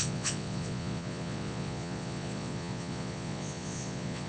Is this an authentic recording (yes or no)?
no